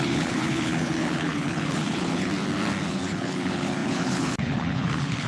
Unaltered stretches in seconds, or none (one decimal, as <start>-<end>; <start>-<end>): 2.3-2.9